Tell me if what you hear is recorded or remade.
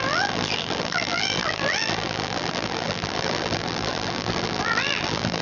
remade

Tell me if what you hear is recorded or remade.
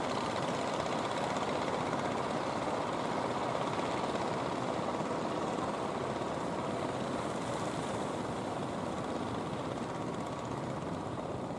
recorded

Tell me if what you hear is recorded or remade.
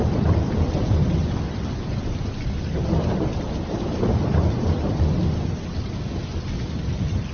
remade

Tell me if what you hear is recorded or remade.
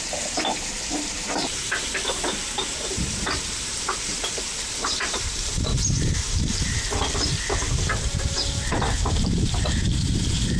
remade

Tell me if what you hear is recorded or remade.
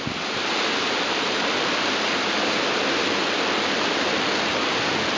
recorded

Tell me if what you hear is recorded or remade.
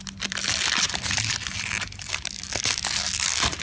recorded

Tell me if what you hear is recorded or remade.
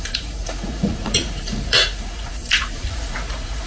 remade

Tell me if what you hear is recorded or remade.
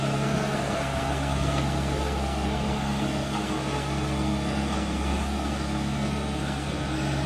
remade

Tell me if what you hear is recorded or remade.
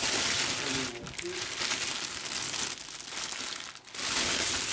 recorded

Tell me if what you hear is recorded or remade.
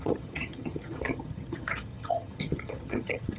remade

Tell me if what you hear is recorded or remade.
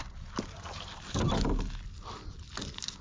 recorded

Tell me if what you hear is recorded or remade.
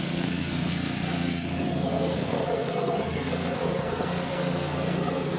remade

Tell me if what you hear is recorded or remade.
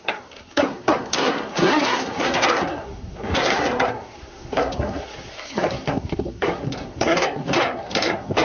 remade